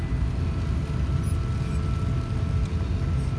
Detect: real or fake real